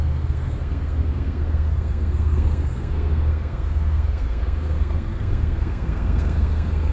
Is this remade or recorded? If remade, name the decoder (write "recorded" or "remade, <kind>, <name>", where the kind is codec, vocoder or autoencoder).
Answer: remade, codec, SNAC